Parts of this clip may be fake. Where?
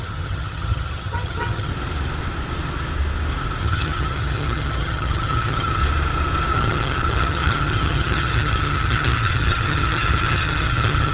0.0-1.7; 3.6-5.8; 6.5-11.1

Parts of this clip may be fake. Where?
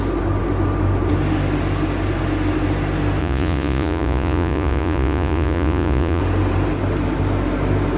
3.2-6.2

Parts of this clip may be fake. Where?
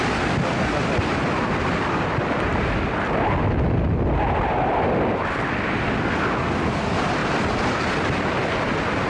7.2-8.7